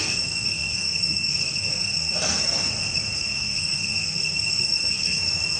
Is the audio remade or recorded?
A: remade